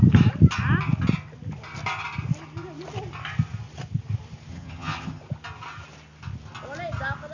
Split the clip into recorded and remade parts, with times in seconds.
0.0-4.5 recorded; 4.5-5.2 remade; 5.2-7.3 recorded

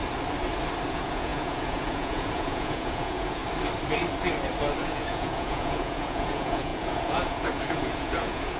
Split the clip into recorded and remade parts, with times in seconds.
0.0-0.9 recorded; 0.9-3.4 remade; 3.4-4.8 recorded; 4.8-8.6 remade

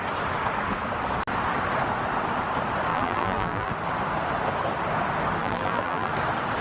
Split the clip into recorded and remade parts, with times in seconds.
0.0-2.9 recorded; 2.9-3.7 remade; 3.7-5.4 recorded; 5.4-6.1 remade; 6.1-6.6 recorded

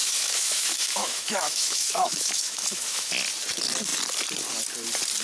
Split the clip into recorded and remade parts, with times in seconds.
0.0-3.1 remade; 3.1-5.2 recorded

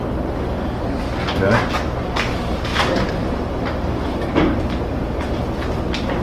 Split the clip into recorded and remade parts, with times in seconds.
0.0-2.7 recorded; 2.7-5.3 remade; 5.3-6.2 recorded

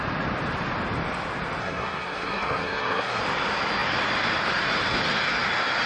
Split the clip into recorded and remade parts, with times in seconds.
0.0-1.6 recorded; 1.6-3.2 remade; 3.2-5.9 recorded

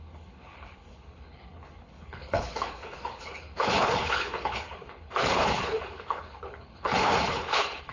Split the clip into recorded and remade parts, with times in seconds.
0.0-7.9 remade

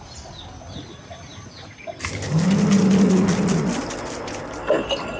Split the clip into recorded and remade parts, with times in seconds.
0.0-5.2 recorded